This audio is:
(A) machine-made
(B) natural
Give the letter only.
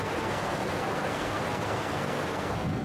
A